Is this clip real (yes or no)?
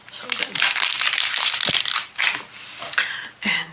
yes